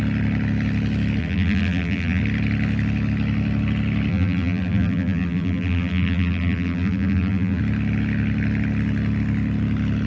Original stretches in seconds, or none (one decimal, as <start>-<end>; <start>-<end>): 0.0-1.2; 2.2-4.1; 7.6-10.1

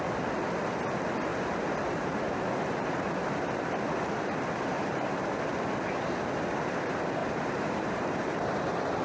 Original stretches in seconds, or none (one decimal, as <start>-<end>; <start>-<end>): 0.0-1.3; 2.3-7.2; 8.5-9.0

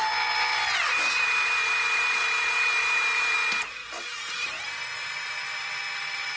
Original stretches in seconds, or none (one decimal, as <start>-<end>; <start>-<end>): 0.0-3.8

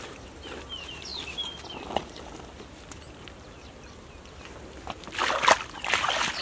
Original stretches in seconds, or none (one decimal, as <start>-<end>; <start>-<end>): 0.0-6.4

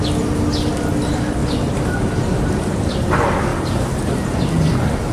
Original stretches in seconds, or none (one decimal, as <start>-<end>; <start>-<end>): 0.0-1.4; 2.9-3.5; 4.4-5.1

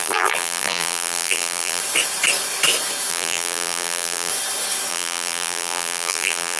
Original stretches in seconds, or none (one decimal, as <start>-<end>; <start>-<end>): 1.8-3.1; 4.3-4.9

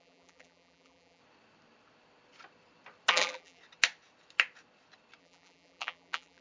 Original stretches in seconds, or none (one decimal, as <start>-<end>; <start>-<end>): 1.2-3.1; 3.6-5.2